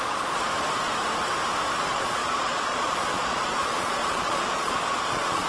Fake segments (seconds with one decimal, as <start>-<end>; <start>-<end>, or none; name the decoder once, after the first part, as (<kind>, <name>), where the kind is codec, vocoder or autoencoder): 0.0-0.5 (vocoder, Vocos); 1.8-5.5